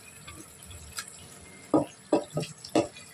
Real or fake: real